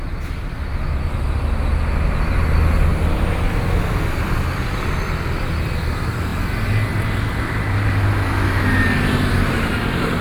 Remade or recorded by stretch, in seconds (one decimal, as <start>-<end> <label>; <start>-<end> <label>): 0.0-10.2 recorded